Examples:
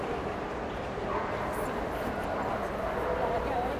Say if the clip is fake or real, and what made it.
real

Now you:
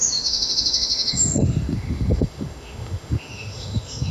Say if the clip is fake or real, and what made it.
fake, autoencoder, DAC-VAE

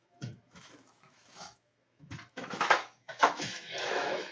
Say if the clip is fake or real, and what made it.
fake, autoencoder, DAC-VAE